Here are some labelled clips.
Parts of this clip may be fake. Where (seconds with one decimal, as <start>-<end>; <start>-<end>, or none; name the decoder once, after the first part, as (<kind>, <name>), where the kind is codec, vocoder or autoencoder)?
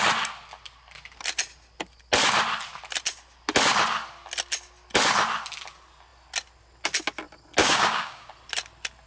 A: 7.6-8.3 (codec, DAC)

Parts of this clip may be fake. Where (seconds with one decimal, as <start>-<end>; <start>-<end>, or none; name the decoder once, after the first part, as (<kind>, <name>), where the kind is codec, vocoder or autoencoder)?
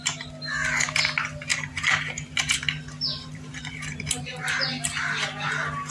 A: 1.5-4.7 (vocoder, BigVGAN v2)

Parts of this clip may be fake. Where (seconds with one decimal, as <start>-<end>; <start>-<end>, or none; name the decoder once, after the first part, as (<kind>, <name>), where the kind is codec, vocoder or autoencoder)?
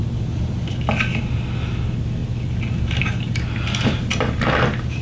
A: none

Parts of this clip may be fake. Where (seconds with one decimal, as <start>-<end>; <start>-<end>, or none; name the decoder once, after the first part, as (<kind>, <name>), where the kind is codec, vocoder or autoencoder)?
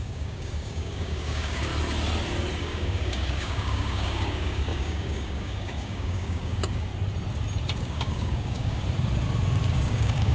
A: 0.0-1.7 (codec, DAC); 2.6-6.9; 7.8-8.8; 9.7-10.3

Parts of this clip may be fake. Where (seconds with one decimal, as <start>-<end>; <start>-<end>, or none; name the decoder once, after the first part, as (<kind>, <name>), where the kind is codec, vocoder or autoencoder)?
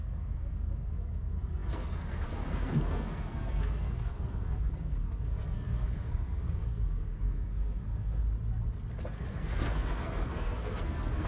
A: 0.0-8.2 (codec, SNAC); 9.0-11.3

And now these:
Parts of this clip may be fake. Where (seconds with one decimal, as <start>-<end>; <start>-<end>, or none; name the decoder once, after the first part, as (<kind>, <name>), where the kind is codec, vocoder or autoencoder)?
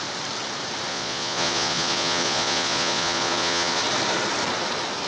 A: 0.9-3.8 (vocoder, Vocos)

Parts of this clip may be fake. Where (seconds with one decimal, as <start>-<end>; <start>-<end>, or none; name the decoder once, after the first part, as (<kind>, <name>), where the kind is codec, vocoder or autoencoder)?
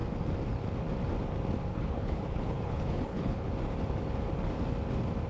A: 1.7-3.5 (codec, HILCodec)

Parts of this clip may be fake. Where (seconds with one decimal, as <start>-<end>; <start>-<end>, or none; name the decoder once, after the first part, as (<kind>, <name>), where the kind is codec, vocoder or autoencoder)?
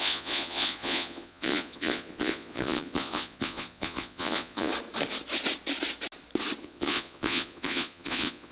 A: 0.0-4.7 (vocoder, Vocos); 6.6-8.5